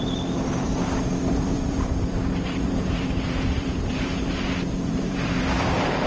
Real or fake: fake